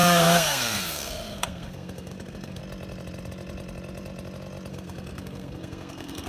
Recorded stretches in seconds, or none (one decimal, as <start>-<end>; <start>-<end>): 2.6-4.7